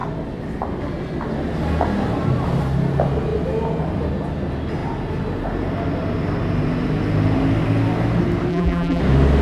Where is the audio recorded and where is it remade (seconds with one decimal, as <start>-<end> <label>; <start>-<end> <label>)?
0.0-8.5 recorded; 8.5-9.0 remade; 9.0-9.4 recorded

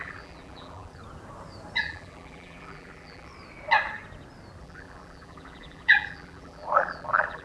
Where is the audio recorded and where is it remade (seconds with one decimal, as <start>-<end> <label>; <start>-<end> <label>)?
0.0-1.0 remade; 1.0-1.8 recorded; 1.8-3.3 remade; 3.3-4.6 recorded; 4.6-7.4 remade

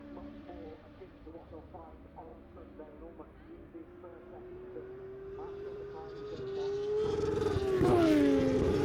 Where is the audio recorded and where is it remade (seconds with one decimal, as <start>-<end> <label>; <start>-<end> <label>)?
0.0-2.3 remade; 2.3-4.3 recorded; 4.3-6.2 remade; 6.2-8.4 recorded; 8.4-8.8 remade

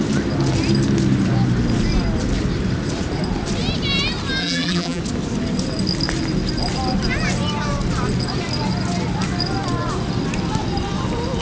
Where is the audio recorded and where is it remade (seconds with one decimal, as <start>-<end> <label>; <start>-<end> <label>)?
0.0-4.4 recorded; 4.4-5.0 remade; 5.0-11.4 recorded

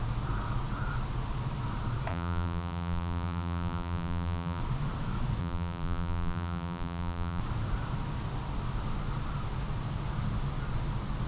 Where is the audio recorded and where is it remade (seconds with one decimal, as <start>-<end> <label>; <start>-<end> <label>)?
0.0-2.1 recorded; 2.1-4.6 remade; 4.6-5.4 recorded; 5.4-7.4 remade; 7.4-11.3 recorded